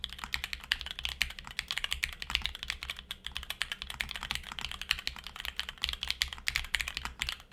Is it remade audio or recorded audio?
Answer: recorded